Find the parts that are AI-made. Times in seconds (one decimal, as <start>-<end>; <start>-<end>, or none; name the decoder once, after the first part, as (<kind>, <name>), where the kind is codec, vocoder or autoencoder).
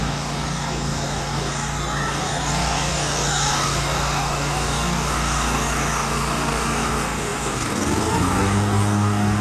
0.0-9.4 (codec, DAC)